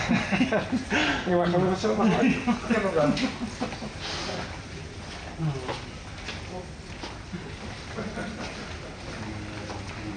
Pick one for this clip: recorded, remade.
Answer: recorded